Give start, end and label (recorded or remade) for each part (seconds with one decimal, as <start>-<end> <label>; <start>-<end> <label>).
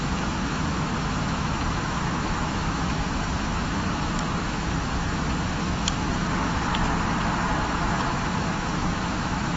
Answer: 0.0-6.7 remade; 6.7-7.8 recorded; 7.8-9.6 remade